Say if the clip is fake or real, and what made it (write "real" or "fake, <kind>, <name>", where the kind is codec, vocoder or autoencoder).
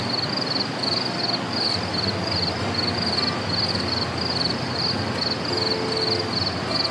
real